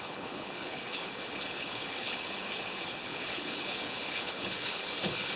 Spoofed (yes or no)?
yes